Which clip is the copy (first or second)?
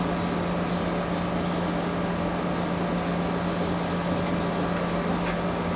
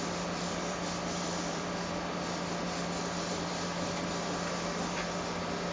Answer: second